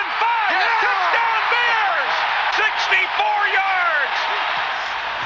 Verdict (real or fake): fake